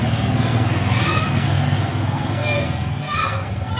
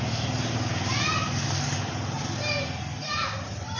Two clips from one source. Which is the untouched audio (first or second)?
second